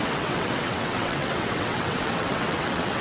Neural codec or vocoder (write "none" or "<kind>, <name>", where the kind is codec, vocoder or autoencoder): vocoder, WaveNeXt